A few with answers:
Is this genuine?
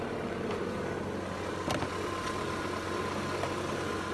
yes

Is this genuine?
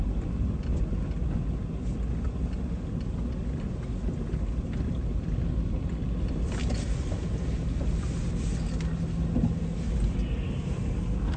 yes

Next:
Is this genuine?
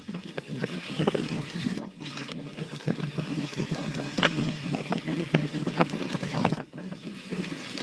no